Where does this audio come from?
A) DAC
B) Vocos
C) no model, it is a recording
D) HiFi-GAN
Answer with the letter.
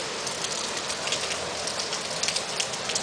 C